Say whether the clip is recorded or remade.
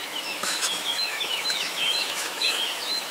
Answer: remade